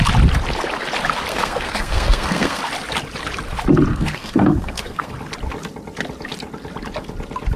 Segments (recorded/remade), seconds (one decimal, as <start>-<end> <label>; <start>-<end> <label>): 0.0-1.3 recorded; 1.3-2.6 remade; 2.6-3.9 recorded; 3.9-5.1 remade; 5.1-7.6 recorded